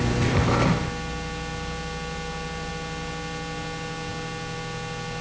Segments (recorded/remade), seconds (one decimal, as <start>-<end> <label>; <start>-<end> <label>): 0.0-5.2 recorded